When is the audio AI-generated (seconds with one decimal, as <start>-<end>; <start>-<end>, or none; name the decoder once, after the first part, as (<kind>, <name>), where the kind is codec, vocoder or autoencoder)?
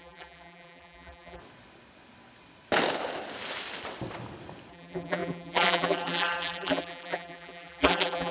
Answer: 0.0-1.4 (vocoder, BigVGAN v2); 4.7-8.3